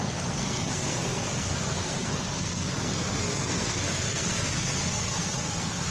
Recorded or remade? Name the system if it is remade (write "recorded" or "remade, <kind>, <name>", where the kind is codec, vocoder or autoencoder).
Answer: remade, codec, SNAC